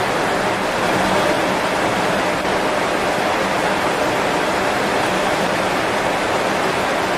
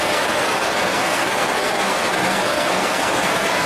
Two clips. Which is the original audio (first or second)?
first